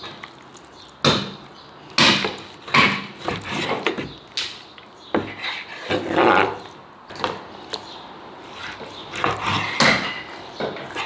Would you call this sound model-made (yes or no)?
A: no